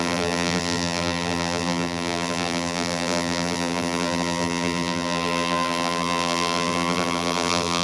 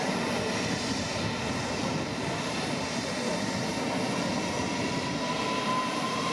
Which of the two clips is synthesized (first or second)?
first